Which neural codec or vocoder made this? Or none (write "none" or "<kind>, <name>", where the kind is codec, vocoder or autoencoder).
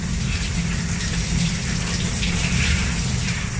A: none